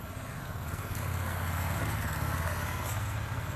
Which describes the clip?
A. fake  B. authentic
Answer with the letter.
A